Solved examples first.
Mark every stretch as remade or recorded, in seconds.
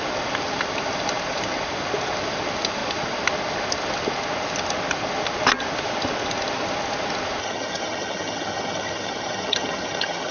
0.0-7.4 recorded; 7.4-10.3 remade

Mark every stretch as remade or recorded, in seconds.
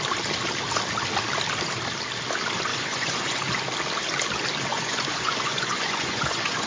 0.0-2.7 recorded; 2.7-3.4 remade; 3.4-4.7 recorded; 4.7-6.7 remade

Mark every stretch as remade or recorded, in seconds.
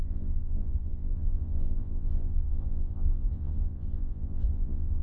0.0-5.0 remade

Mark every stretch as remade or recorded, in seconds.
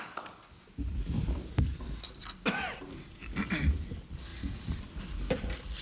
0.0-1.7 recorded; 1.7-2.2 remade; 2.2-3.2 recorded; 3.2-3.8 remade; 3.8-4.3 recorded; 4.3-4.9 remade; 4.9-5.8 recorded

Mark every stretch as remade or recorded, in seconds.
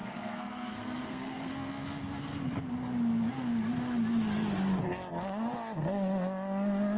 0.0-1.5 remade; 1.5-7.0 recorded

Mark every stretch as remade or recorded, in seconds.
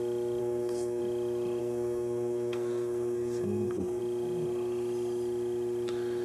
0.0-0.4 recorded; 0.4-1.0 remade; 1.0-1.6 recorded; 1.6-4.0 remade; 4.0-6.2 recorded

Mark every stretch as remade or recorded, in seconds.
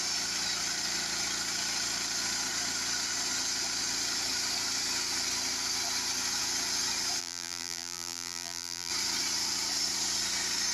0.0-7.2 recorded; 7.2-8.9 remade; 8.9-10.7 recorded